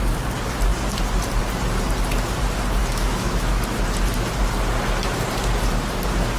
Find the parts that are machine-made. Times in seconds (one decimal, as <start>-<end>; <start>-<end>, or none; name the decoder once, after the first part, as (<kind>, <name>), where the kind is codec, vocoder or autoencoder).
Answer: 2.8-3.6 (autoencoder, DAC-VAE)